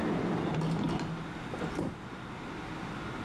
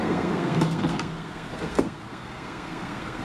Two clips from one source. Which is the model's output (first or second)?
second